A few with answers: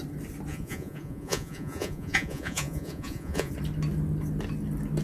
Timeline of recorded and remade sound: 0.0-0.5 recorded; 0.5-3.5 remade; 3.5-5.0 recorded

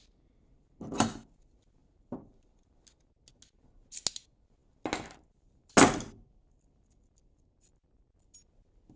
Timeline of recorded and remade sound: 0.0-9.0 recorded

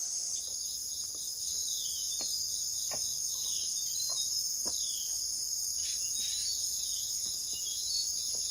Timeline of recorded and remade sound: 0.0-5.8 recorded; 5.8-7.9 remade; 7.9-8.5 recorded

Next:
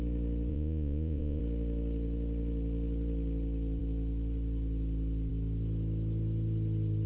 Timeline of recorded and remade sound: 0.0-0.5 recorded; 0.5-1.4 remade; 1.4-7.1 recorded

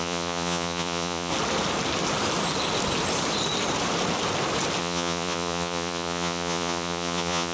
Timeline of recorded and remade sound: 0.0-1.3 remade; 1.3-4.8 recorded; 4.8-7.5 remade

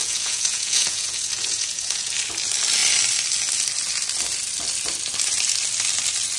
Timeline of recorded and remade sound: 0.0-2.1 remade; 2.1-6.4 recorded

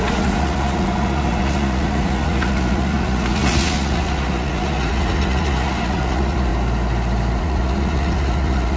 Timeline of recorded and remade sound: 0.0-6.5 remade; 6.5-7.4 recorded; 7.4-8.8 remade

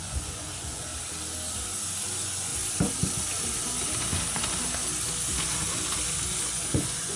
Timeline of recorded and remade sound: 0.0-0.9 remade; 0.9-2.1 recorded; 2.1-2.5 remade; 2.5-6.4 recorded; 6.4-7.2 remade